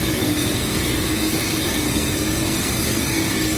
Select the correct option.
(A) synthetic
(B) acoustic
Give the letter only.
A